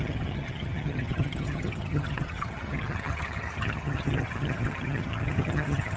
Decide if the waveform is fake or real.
fake